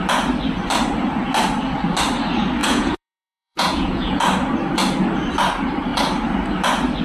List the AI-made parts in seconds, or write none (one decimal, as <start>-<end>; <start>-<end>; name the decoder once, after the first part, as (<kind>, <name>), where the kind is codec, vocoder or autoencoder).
2.6-4.2 (vocoder, Vocos)